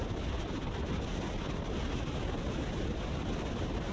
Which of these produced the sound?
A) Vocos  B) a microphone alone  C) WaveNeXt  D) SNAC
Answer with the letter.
B